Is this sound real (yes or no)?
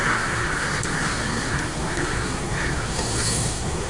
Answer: no